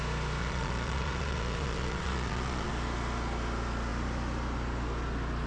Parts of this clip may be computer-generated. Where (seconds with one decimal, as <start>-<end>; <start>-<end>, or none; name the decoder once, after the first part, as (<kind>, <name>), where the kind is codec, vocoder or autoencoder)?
0.4-2.7 (vocoder, Vocos)